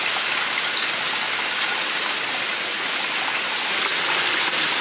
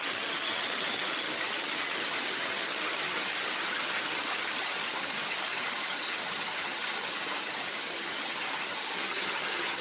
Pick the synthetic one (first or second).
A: second